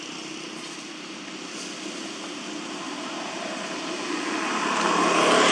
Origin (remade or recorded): recorded